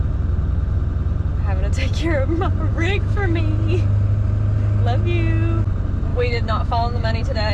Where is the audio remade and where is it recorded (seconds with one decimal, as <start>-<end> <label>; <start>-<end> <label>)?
0.0-2.7 recorded; 2.7-3.4 remade; 3.4-6.1 recorded; 6.1-7.5 remade